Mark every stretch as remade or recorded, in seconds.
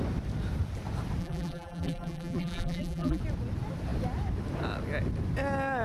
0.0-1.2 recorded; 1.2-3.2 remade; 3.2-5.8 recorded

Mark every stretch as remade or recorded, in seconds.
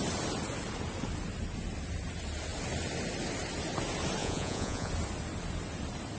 0.0-4.2 recorded; 4.2-4.9 remade; 4.9-6.2 recorded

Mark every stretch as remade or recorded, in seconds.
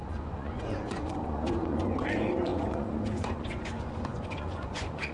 0.0-5.1 remade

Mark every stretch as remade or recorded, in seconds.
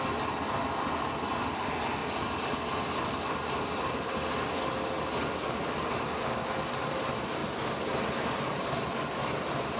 0.0-9.8 recorded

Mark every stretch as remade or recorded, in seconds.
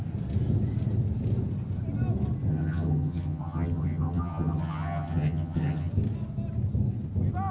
0.0-2.5 recorded; 2.5-5.9 remade; 5.9-7.5 recorded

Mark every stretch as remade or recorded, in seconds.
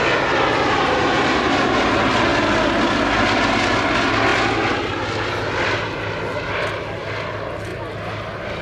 0.0-8.6 recorded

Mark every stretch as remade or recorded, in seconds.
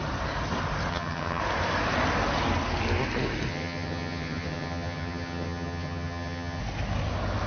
0.0-0.9 recorded; 0.9-1.4 remade; 1.4-3.5 recorded; 3.5-6.6 remade; 6.6-7.5 recorded